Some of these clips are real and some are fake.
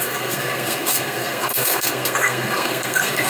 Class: fake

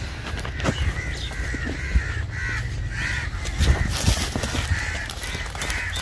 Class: real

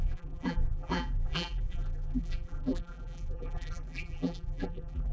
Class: fake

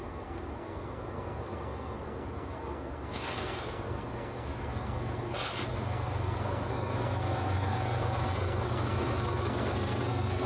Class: fake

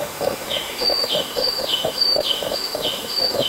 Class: fake